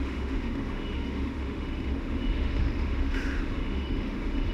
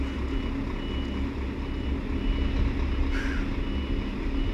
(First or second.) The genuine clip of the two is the second